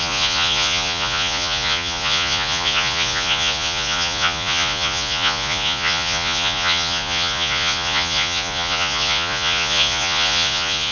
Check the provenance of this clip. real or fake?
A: fake